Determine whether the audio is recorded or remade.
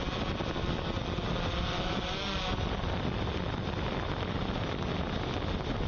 recorded